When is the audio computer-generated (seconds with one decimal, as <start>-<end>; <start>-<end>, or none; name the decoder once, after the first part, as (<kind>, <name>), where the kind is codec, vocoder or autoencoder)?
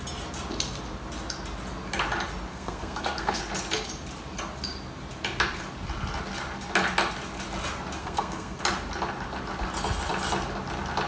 2.5-3.4 (codec, SNAC); 8.0-8.6